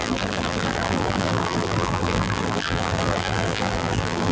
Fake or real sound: fake